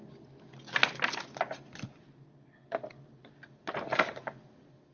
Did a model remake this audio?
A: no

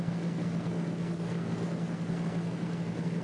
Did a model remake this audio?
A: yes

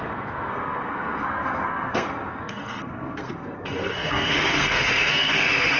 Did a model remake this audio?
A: yes